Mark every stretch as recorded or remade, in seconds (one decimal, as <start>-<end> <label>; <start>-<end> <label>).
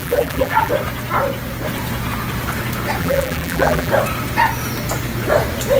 0.0-0.7 remade; 0.7-3.0 recorded; 3.0-3.9 remade; 3.9-5.8 recorded